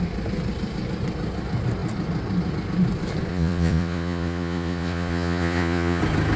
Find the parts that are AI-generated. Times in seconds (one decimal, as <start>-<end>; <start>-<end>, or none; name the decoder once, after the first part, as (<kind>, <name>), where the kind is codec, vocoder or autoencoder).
3.3-6.0 (vocoder, Vocos)